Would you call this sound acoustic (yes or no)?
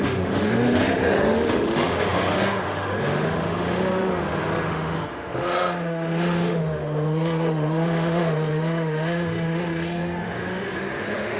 no